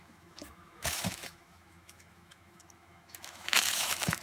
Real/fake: fake